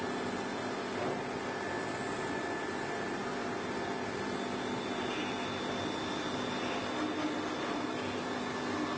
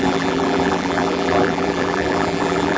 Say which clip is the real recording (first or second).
first